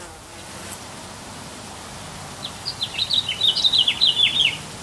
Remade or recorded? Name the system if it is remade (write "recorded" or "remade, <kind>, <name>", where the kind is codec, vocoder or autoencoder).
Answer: recorded